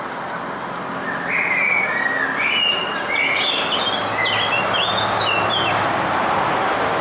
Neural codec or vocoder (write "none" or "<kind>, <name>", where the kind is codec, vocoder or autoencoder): none